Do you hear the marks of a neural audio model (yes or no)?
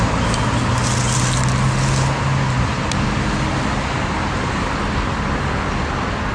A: no